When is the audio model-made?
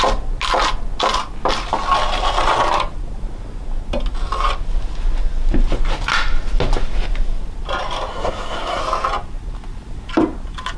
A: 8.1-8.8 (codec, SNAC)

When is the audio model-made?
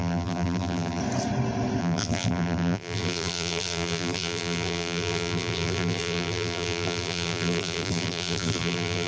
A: 0.0-1.0 (vocoder, BigVGAN v2); 1.8-9.1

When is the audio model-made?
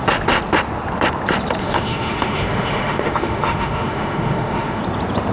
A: 1.6-4.8 (autoencoder, DAC-VAE)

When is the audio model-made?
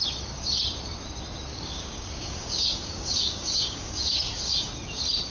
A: 1.5-4.7 (codec, DAC)